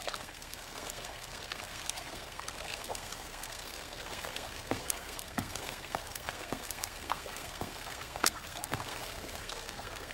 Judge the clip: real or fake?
fake